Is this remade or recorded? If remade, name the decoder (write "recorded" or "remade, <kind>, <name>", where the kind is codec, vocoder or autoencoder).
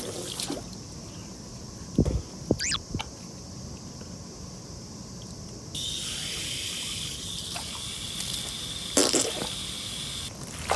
recorded